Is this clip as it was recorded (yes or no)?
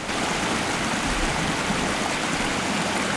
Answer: yes